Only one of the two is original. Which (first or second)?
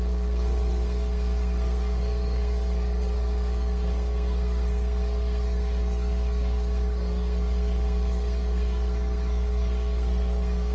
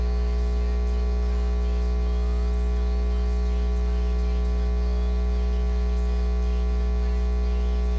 second